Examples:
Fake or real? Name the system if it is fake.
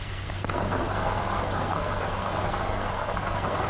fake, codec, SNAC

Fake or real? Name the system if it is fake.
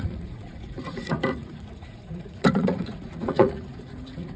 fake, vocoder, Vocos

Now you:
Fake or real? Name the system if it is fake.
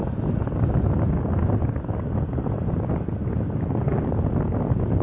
real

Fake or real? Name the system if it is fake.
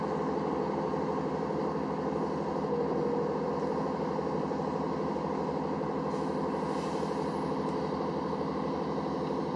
real